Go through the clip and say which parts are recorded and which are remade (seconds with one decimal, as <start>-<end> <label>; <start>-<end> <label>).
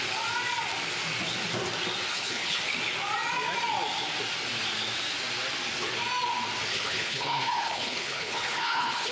0.0-2.1 recorded; 2.1-2.6 remade; 2.6-6.7 recorded; 6.7-9.1 remade